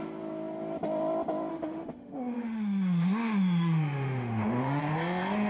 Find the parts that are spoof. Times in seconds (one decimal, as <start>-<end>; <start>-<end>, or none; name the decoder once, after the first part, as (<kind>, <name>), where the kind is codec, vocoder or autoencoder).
1.5-4.8 (autoencoder, DAC-VAE)